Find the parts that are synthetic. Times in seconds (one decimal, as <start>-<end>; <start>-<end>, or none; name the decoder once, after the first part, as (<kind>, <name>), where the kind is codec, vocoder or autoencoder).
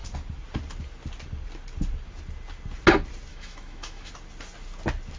3.3-4.1 (autoencoder, DAC-VAE)